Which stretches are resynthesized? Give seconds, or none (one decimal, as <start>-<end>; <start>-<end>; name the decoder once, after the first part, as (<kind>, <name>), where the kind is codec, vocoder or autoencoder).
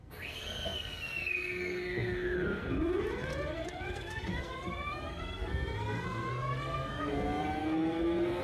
0.0-8.4 (codec, SNAC)